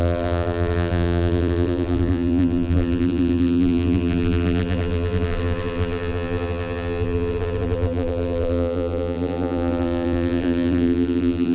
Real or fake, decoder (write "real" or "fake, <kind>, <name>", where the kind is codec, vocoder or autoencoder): fake, vocoder, BigVGAN v2